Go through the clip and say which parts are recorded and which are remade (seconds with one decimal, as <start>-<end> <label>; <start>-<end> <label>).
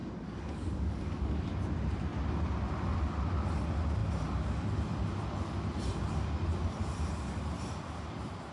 0.0-1.4 remade; 1.4-8.5 recorded